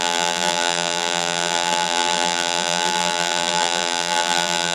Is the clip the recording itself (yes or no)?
no